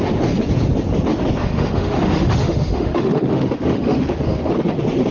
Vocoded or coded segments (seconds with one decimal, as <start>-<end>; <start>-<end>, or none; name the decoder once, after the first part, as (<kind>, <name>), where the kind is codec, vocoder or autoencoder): 1.4-4.5 (autoencoder, DAC-VAE)